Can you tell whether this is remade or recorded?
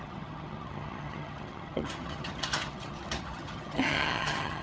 remade